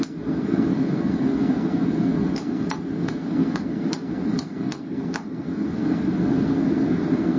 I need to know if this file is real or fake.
fake